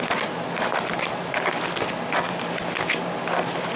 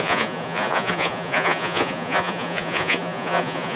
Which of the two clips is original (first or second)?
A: first